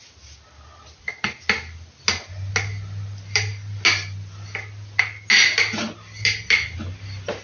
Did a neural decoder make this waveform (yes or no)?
no